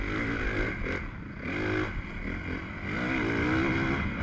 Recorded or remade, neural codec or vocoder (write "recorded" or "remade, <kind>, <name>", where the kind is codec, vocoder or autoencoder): recorded